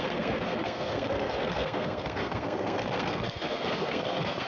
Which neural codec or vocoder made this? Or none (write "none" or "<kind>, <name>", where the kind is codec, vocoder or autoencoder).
codec, SNAC